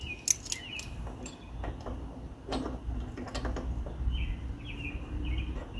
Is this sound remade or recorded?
recorded